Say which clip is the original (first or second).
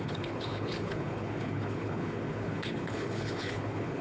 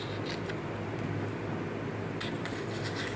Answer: second